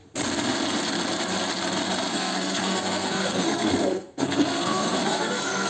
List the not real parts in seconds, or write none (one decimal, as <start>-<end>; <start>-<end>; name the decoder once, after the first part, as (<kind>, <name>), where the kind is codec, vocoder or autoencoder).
2.1-5.7 (codec, SNAC)